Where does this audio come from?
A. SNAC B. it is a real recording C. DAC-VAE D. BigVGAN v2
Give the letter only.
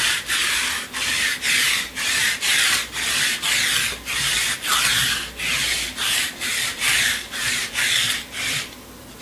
D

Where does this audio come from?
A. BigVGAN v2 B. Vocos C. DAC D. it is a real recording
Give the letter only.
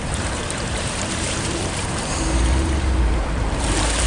A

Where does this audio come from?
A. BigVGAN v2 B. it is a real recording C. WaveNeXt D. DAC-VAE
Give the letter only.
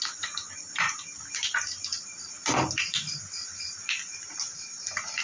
A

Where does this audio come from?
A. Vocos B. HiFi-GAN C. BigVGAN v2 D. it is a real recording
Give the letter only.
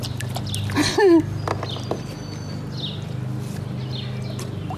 D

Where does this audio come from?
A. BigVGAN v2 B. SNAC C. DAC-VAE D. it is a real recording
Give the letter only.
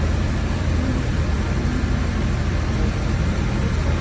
A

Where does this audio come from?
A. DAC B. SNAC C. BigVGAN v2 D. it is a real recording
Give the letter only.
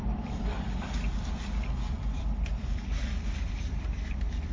C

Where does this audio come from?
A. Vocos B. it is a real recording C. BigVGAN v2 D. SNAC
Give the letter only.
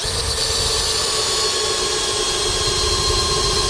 B